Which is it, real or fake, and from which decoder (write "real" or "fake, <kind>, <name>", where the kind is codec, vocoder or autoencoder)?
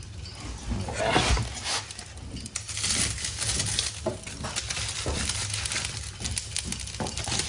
real